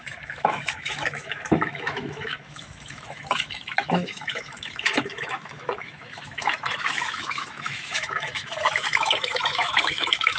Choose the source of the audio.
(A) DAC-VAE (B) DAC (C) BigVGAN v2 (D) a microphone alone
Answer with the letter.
A